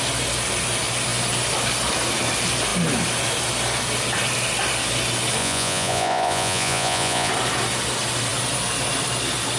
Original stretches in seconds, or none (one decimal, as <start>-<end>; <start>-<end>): 0.0-5.4; 7.3-9.6